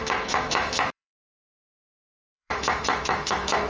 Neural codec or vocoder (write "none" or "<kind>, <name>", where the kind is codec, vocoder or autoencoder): autoencoder, DAC-VAE